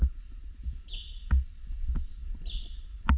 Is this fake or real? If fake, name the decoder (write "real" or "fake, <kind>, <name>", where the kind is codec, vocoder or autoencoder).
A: real